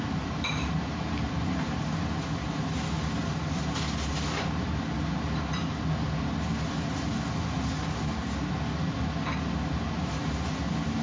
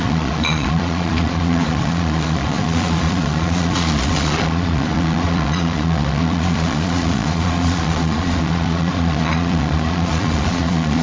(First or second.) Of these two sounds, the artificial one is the second